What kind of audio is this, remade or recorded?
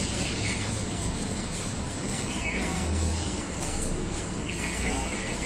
remade